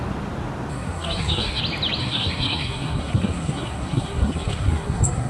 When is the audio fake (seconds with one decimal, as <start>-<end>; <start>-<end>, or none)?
0.7-1.6; 2.0-5.3